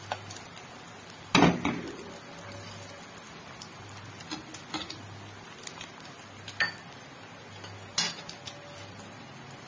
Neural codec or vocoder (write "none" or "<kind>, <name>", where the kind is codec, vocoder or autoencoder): none